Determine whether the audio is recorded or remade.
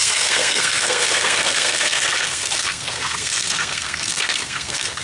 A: remade